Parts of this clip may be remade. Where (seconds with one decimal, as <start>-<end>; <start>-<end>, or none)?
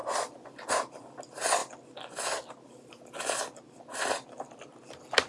0.7-1.6; 4.4-5.3